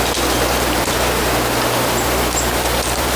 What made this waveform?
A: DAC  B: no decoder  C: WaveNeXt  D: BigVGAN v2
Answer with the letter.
D